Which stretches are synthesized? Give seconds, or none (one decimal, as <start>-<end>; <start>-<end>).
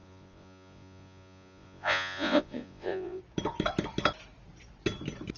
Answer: 0.0-3.2